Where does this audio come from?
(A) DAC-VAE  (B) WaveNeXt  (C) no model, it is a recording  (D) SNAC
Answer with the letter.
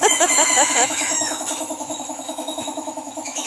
A